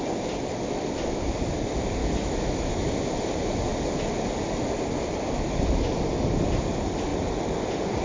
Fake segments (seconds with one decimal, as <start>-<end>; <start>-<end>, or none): 2.0-2.7